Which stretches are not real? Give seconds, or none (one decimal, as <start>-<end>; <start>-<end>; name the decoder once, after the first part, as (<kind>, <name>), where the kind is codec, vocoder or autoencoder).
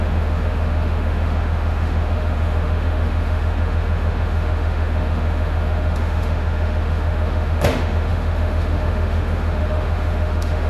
0.0-10.7 (autoencoder, DAC-VAE)